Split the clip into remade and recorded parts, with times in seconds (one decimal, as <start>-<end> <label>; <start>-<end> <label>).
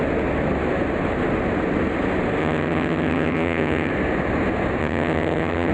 0.0-2.4 recorded; 2.4-3.9 remade; 3.9-4.8 recorded; 4.8-5.7 remade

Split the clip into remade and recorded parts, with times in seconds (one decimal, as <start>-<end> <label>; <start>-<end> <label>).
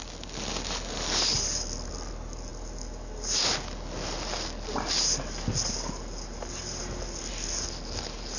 0.0-8.4 recorded